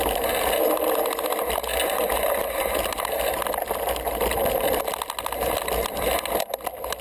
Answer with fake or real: real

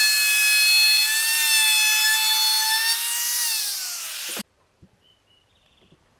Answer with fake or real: real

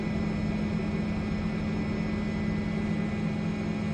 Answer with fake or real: real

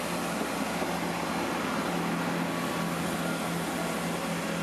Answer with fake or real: real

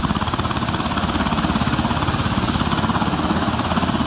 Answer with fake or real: real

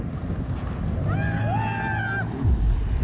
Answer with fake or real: real